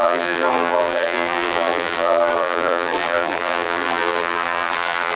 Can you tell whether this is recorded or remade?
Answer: remade